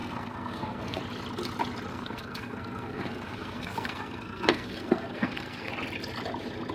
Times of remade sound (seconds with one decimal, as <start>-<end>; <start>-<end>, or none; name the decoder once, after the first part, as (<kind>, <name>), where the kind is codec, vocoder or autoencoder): 0.0-1.0 (codec, SNAC); 1.9-5.7